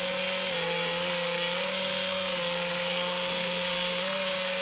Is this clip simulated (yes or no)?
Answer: yes